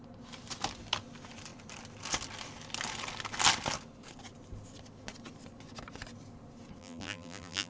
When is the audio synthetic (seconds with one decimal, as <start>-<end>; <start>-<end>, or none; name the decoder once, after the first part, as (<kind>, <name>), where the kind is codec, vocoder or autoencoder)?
6.8-7.7 (vocoder, BigVGAN v2)